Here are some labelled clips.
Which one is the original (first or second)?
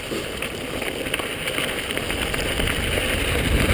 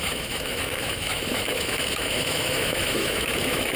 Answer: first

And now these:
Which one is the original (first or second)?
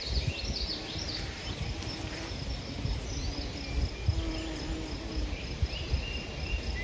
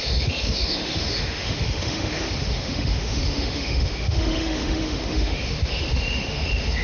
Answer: first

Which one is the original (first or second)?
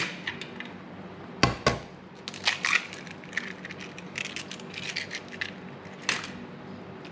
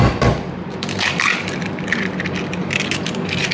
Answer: first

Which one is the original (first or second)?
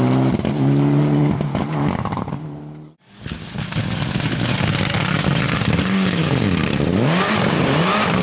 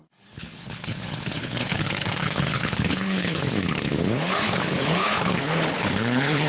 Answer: first